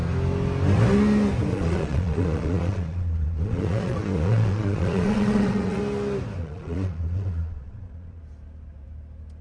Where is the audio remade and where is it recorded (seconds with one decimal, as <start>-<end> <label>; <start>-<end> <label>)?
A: 0.0-1.5 recorded; 1.5-5.8 remade; 5.8-6.4 recorded; 6.4-8.2 remade; 8.2-9.4 recorded